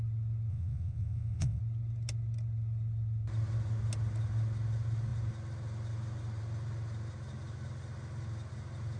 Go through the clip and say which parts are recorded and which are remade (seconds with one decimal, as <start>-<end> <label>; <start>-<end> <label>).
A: 0.0-0.5 recorded; 0.5-1.6 remade; 1.6-9.0 recorded